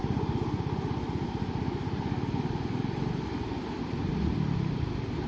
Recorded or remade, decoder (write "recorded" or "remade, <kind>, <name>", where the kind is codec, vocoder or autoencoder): recorded